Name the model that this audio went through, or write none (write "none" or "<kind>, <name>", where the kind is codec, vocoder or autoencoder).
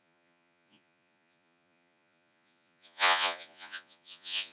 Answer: vocoder, Vocos